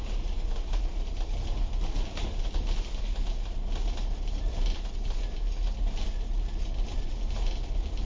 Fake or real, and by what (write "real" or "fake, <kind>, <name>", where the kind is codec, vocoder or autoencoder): real